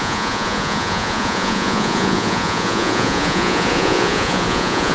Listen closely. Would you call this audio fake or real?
fake